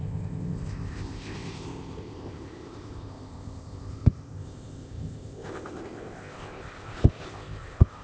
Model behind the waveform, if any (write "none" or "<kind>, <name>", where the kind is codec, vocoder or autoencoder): codec, ZipCodec